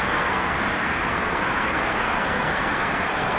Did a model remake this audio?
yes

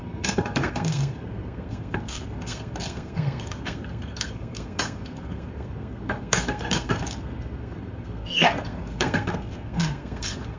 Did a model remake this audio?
yes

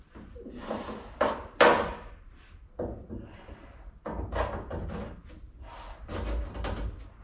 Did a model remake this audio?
no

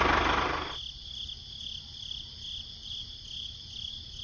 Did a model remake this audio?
no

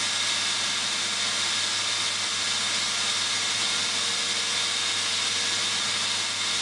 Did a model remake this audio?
no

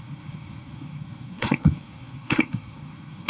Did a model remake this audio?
yes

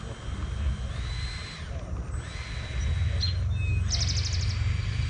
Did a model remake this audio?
no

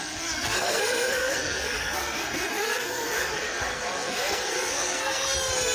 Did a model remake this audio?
yes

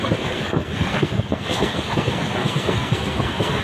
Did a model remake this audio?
yes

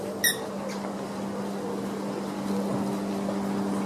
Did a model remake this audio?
no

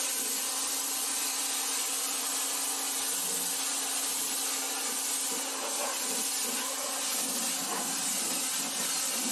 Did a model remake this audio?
no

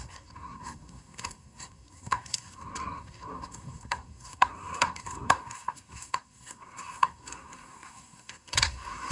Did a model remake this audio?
yes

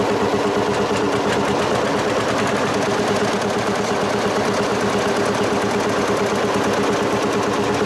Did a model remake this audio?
no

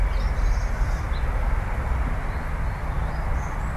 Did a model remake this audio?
no